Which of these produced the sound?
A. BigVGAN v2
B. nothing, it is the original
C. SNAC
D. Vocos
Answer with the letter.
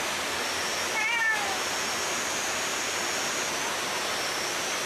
B